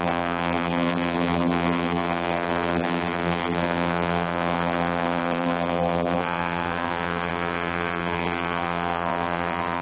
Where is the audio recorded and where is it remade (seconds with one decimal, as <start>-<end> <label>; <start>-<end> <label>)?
0.0-9.8 remade